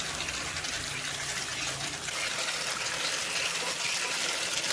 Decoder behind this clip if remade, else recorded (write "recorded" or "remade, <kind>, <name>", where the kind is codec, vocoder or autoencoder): remade, vocoder, BigVGAN v2